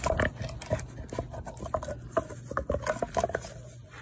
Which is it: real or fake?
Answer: real